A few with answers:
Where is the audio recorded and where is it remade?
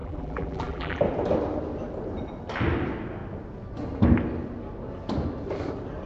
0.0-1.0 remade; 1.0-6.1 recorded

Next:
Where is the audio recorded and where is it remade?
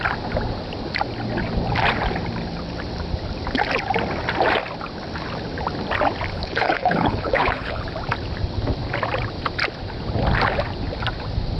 0.0-6.3 recorded; 6.3-7.9 remade; 7.9-11.6 recorded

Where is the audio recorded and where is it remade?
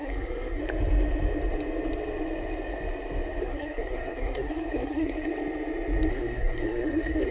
0.0-0.6 remade; 0.6-3.4 recorded; 3.4-5.3 remade; 5.3-6.1 recorded; 6.1-7.3 remade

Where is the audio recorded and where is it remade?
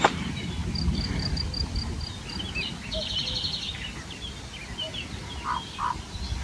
0.0-6.4 recorded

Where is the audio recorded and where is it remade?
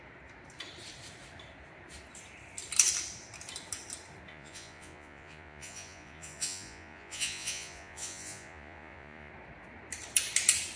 0.0-4.3 recorded; 4.3-9.3 remade; 9.3-10.8 recorded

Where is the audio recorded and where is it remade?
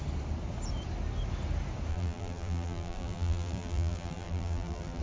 0.0-1.9 recorded; 1.9-5.0 remade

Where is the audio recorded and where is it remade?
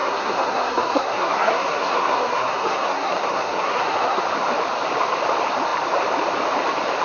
0.0-4.2 remade; 4.2-7.0 recorded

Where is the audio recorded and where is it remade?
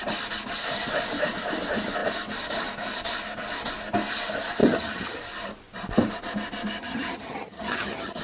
0.0-4.6 recorded; 4.6-5.2 remade; 5.2-6.8 recorded; 6.8-8.2 remade